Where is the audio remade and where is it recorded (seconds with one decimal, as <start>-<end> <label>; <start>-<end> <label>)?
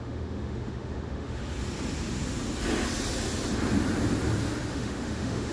0.0-1.4 remade; 1.4-4.7 recorded; 4.7-5.5 remade